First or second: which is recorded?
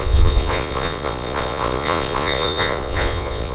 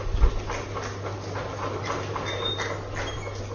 second